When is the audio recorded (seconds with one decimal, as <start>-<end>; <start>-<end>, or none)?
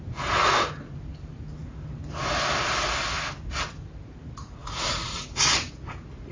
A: 0.0-4.6; 5.7-6.3